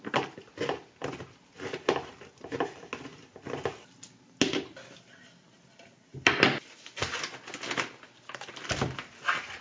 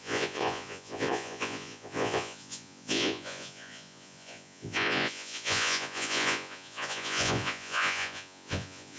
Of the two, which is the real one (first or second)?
first